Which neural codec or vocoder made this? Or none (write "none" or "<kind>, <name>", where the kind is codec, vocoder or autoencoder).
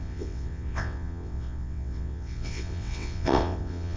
vocoder, WaveNeXt